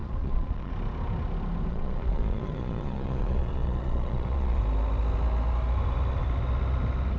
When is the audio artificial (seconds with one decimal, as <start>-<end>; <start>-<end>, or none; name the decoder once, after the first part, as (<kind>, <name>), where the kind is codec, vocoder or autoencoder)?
0.0-0.7 (vocoder, Vocos); 1.7-4.6